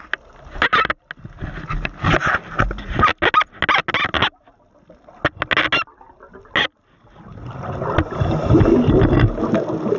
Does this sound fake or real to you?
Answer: real